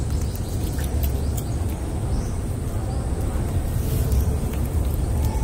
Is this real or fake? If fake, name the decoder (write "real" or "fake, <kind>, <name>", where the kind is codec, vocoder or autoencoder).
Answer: real